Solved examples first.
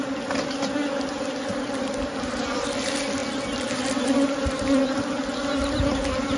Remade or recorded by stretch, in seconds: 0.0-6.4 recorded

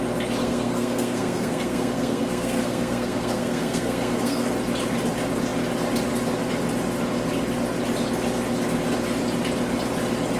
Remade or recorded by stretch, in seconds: 0.0-0.4 recorded; 0.4-4.5 remade; 4.5-10.4 recorded

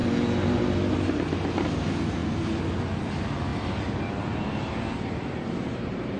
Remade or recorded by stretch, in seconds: 0.0-3.5 recorded; 3.5-6.2 remade

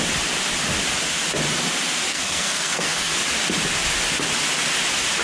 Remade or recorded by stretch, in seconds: 0.0-2.1 recorded; 2.1-3.1 remade; 3.1-5.2 recorded

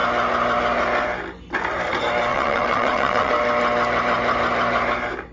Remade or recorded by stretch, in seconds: 0.0-2.3 recorded; 2.3-3.3 remade; 3.3-5.3 recorded